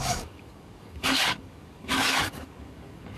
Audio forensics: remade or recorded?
remade